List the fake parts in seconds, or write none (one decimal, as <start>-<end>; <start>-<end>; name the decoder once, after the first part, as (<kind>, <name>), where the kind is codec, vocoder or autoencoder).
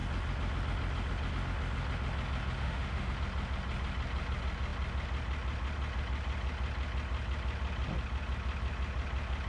2.6-3.1 (autoencoder, DAC-VAE)